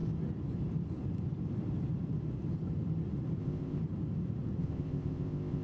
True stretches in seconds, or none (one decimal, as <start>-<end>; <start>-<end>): 0.0-3.4; 3.8-4.6